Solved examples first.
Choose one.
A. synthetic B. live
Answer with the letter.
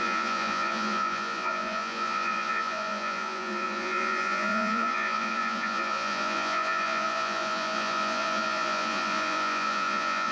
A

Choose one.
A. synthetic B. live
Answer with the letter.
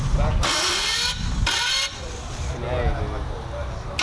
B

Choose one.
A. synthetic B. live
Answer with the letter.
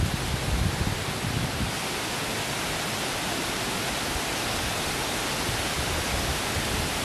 B